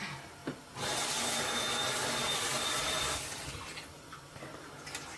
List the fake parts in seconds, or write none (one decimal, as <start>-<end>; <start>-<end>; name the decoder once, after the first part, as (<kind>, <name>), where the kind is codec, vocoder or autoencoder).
none